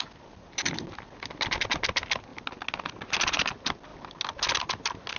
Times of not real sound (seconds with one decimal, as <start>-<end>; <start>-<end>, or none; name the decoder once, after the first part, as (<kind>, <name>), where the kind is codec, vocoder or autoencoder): none